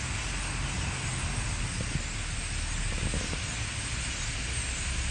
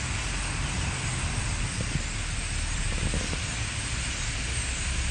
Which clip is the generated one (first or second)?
second